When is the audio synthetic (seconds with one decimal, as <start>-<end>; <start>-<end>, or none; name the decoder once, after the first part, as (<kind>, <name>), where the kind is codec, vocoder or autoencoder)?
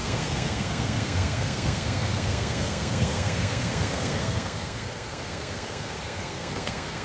0.0-7.0 (codec, SNAC)